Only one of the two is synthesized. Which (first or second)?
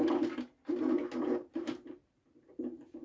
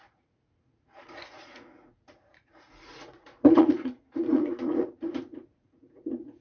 second